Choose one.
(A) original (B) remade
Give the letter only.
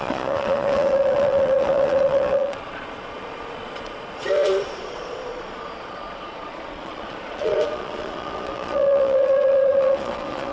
B